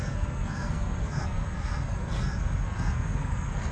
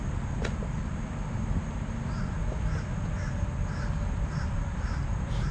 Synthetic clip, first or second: first